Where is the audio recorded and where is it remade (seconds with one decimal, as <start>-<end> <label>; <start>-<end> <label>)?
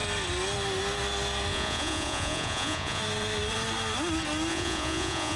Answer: 0.0-1.5 recorded; 1.5-3.0 remade; 3.0-4.5 recorded; 4.5-5.4 remade